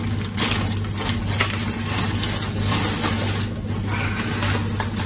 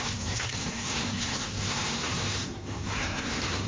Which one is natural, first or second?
first